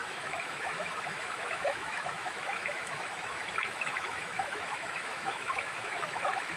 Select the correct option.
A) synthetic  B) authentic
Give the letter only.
A